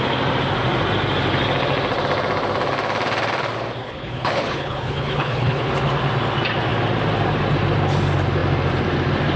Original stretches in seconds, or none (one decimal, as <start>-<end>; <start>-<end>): 0.0-3.8; 5.7-9.4